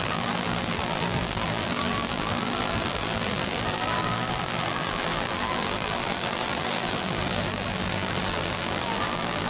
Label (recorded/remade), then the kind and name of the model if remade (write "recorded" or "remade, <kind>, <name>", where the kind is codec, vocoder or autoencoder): remade, vocoder, BigVGAN v2